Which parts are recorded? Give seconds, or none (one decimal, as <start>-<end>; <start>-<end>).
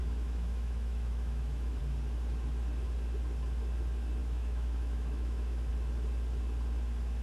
1.8-4.2; 5.7-7.2